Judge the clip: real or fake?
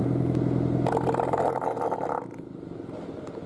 real